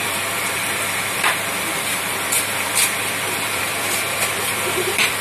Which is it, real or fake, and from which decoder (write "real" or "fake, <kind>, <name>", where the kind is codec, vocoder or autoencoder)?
fake, vocoder, BigVGAN v2